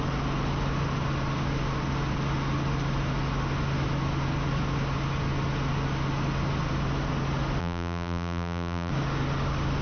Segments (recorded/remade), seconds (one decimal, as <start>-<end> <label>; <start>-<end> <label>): 0.0-7.6 recorded; 7.6-8.9 remade; 8.9-9.8 recorded

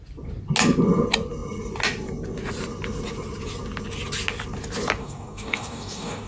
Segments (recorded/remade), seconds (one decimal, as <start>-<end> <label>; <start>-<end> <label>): 0.0-5.0 recorded; 5.0-6.3 remade

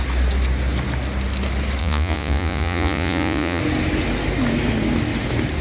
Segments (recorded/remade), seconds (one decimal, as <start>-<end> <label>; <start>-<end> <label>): 0.0-1.8 recorded; 1.8-3.6 remade; 3.6-5.6 recorded